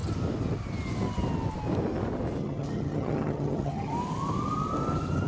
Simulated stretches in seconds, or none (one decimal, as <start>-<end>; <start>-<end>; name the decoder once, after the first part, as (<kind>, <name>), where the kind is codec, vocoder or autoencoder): 2.4-3.9 (vocoder, HiFi-GAN)